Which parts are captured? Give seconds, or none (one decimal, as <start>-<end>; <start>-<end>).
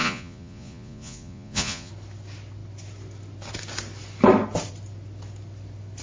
1.9-6.0